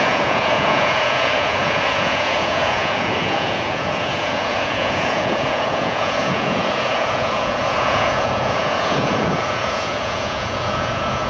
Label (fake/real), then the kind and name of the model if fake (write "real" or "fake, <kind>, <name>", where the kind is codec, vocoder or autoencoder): fake, vocoder, Vocos